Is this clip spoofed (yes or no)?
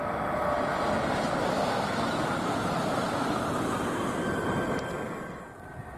no